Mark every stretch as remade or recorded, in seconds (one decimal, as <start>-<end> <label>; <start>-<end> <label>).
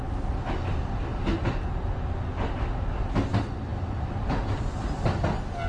0.0-5.7 recorded